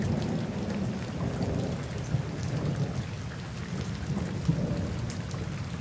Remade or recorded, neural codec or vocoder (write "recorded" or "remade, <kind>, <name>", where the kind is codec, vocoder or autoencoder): recorded